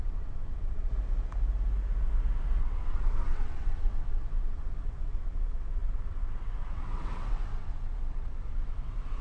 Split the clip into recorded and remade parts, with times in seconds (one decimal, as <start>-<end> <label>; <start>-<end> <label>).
0.0-0.9 remade; 0.9-2.6 recorded; 2.6-9.2 remade